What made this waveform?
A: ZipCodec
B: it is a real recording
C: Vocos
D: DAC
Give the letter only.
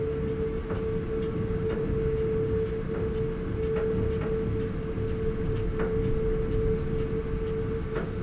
B